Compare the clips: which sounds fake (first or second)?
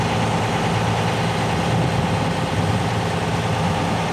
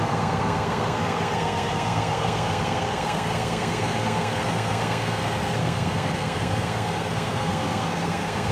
second